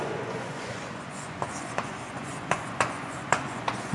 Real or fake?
fake